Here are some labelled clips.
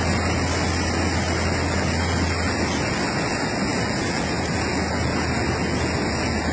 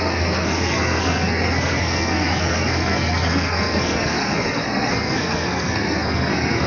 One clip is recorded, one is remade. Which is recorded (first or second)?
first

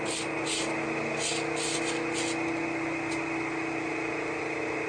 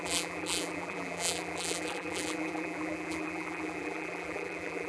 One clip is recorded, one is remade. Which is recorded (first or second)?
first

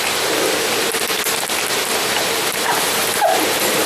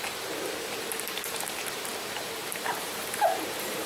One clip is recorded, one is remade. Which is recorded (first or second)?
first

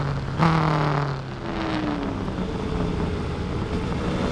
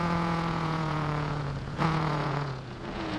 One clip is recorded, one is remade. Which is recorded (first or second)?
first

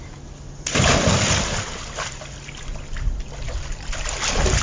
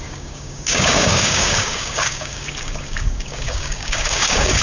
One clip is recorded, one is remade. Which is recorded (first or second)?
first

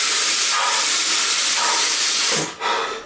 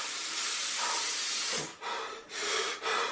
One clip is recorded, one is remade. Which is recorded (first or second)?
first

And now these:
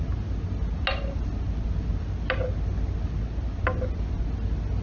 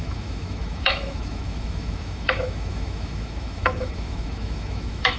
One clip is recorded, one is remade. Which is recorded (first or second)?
first